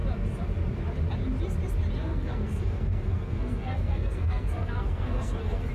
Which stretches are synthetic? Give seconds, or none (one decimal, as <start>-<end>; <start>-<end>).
2.0-5.7